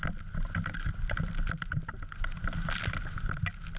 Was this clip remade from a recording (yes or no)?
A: no